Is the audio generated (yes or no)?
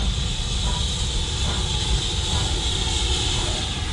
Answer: no